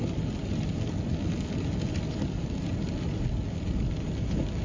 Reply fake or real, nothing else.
real